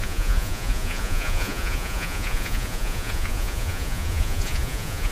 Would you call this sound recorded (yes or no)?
no